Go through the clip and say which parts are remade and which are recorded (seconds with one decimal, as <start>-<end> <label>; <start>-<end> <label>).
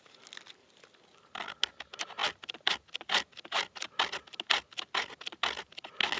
0.0-6.2 recorded